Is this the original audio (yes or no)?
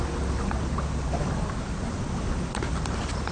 yes